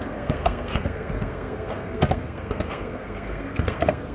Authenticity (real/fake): fake